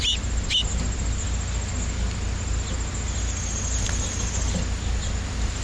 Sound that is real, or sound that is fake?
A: real